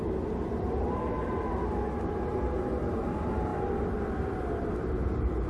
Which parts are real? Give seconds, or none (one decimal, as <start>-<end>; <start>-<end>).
0.0-5.5